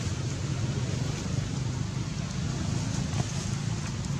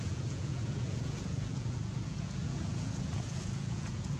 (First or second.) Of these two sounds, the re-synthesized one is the second